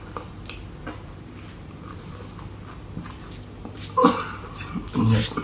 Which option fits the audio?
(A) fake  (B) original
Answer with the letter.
B